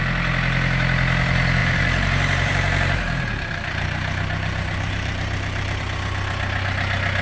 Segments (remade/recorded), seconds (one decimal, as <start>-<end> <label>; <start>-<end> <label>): 0.0-1.6 recorded; 1.6-5.8 remade; 5.8-7.2 recorded